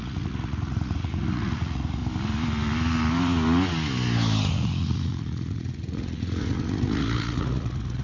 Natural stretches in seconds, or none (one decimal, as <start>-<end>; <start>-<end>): 2.0-4.5